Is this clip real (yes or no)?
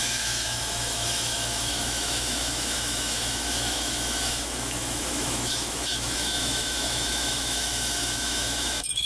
no